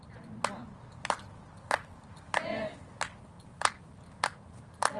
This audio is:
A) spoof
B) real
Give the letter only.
B